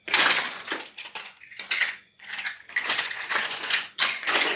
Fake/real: fake